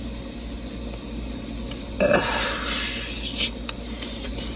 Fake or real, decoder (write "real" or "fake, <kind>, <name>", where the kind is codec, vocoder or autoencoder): real